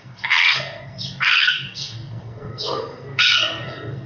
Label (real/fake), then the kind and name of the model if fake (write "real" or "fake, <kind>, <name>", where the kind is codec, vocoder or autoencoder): fake, codec, SNAC